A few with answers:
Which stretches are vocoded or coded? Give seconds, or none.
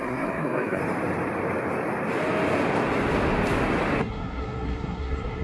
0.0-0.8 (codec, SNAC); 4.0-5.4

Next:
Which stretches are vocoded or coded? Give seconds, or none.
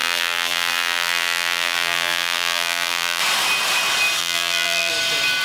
0.0-3.2 (vocoder, BigVGAN v2); 4.2-4.9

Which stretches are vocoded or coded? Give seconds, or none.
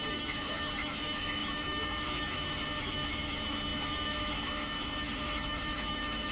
0.0-6.3 (autoencoder, DAC-VAE)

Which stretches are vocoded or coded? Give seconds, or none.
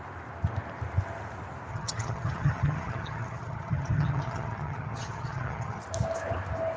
1.7-5.8 (vocoder, HiFi-GAN)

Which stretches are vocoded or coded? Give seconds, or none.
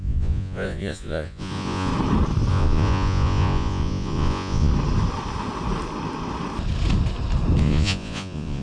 0.0-1.9 (vocoder, Vocos); 2.5-4.7; 7.6-8.6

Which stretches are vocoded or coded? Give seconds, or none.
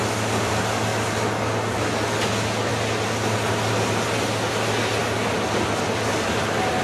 none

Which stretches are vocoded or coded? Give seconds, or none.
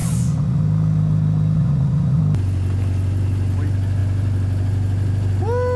0.0-0.6 (vocoder, Vocos); 1.6-2.2